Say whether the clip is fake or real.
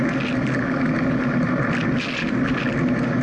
real